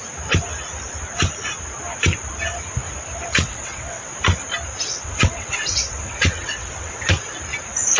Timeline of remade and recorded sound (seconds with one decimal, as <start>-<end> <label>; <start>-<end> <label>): 0.0-3.3 recorded; 3.3-4.1 remade; 4.1-4.9 recorded; 4.9-7.1 remade; 7.1-8.0 recorded

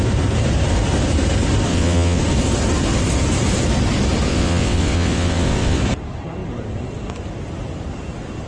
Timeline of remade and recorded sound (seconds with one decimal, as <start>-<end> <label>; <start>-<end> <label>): 0.0-1.7 recorded; 1.7-2.2 remade; 2.2-4.3 recorded; 4.3-5.8 remade; 5.8-8.5 recorded